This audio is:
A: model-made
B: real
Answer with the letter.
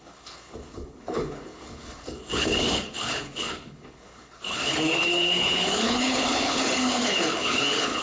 A